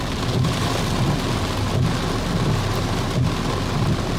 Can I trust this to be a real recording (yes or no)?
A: yes